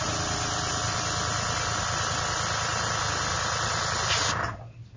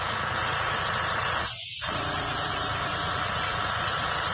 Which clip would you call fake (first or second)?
second